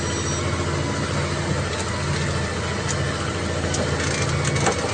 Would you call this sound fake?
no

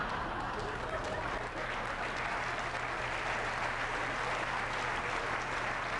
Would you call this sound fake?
no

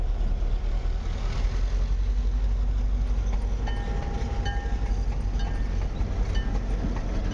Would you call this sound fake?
no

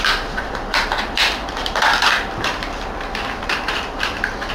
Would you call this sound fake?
yes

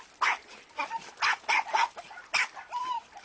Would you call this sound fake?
yes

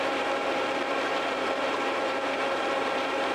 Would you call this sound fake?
yes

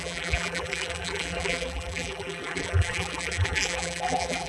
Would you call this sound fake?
yes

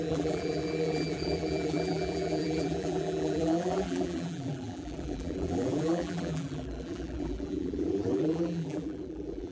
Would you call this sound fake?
yes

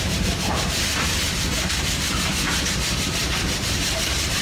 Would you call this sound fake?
yes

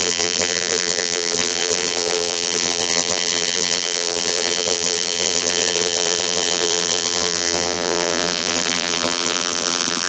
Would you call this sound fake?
yes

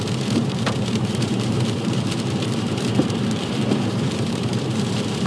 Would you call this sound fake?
yes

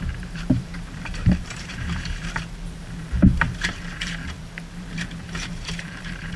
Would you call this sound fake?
yes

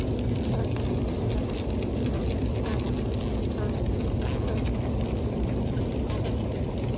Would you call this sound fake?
no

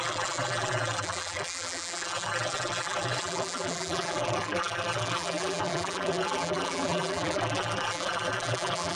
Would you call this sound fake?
yes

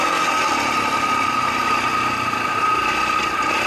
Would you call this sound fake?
no